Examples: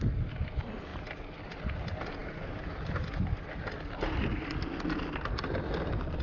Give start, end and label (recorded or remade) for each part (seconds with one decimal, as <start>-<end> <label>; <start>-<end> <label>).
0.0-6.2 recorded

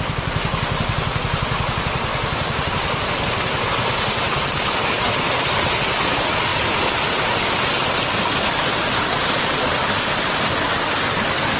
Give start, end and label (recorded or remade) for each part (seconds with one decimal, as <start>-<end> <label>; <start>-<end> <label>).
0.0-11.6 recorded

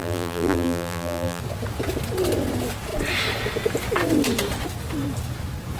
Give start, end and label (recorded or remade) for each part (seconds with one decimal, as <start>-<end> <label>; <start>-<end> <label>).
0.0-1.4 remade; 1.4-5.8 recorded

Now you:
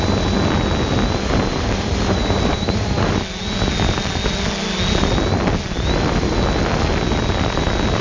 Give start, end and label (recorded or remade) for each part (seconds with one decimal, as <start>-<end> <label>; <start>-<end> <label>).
0.0-1.5 recorded; 1.5-3.0 remade; 3.0-8.0 recorded

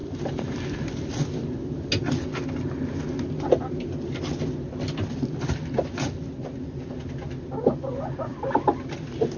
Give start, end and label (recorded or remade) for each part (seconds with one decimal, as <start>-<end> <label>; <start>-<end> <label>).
0.0-1.2 remade; 1.2-9.4 recorded

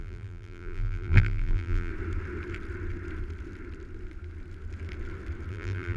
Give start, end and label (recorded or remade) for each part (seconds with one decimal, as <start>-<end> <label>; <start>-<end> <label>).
0.0-1.9 remade; 1.9-5.5 recorded; 5.5-6.0 remade

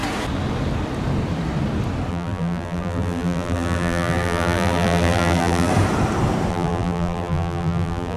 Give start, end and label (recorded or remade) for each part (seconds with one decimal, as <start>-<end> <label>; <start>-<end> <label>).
0.0-2.1 recorded; 2.1-5.7 remade; 5.7-6.5 recorded; 6.5-8.2 remade